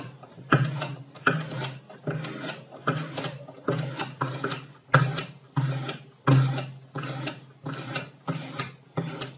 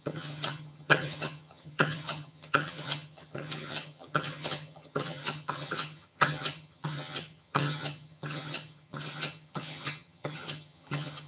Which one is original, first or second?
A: first